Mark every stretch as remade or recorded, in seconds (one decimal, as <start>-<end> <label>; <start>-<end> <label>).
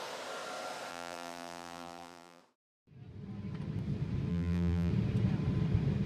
0.0-0.9 recorded; 0.9-2.4 remade; 2.4-4.3 recorded; 4.3-4.9 remade; 4.9-6.1 recorded